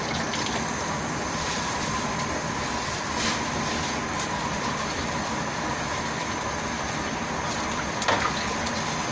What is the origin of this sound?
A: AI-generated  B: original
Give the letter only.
B